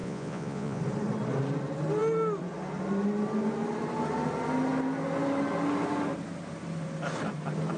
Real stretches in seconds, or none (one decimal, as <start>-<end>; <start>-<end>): 0.8-7.8